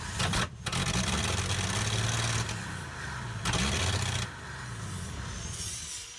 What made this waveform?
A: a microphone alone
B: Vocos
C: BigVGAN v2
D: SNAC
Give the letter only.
A